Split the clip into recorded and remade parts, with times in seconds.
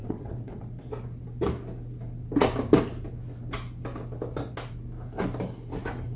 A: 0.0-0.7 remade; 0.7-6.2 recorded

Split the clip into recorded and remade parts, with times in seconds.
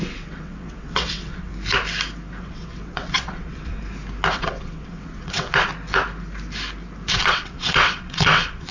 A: 0.0-1.5 remade; 1.5-2.4 recorded; 2.4-3.8 remade; 3.8-4.3 recorded; 4.3-5.7 remade; 5.7-7.1 recorded; 7.1-8.7 remade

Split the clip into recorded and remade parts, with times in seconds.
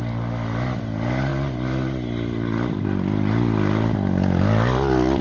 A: 0.0-5.2 recorded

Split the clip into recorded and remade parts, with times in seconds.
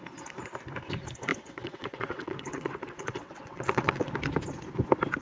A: 0.0-1.3 recorded; 1.3-4.1 remade; 4.1-5.2 recorded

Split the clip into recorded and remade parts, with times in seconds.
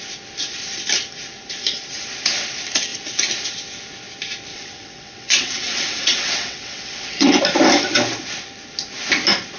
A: 0.0-4.5 recorded; 4.5-7.4 remade; 7.4-9.6 recorded